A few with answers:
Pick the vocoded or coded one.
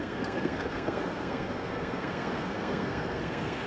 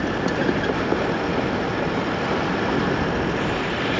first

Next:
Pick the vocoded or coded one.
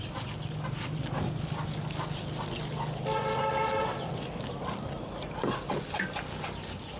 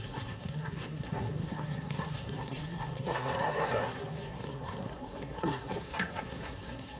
second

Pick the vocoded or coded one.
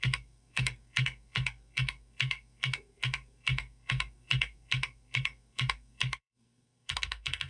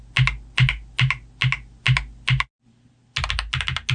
first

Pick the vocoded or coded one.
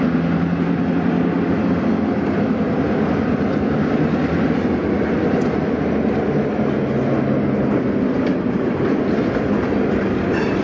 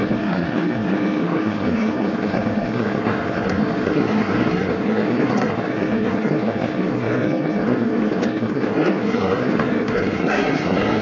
second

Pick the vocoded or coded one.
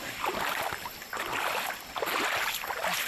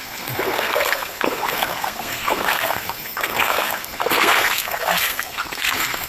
second